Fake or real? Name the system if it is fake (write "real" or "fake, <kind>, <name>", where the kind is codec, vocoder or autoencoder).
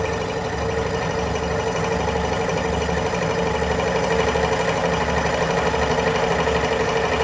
real